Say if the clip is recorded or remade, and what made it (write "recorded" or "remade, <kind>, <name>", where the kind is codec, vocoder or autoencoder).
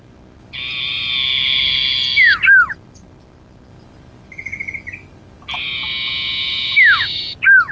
recorded